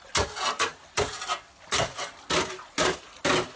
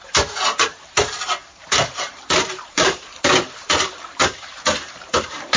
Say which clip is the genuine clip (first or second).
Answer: first